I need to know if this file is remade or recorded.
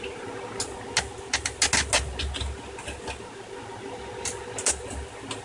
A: recorded